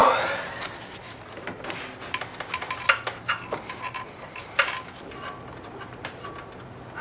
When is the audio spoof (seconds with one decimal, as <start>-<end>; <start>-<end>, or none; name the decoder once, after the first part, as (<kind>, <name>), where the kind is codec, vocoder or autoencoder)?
none